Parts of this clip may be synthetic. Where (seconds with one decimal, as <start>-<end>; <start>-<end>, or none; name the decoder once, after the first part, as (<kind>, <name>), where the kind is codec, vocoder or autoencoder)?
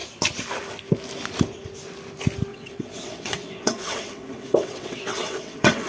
2.5-5.9 (vocoder, WaveNeXt)